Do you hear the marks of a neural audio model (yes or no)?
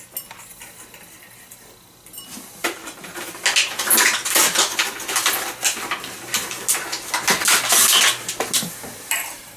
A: no